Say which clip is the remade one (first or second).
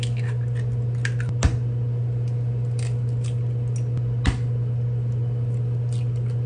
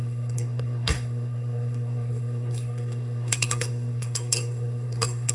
second